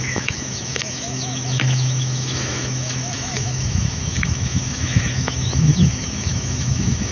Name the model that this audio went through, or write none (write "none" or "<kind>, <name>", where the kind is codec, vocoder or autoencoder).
autoencoder, DAC-VAE